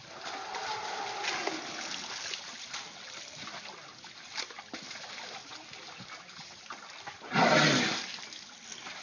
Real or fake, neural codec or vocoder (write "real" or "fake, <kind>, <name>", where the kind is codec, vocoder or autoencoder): real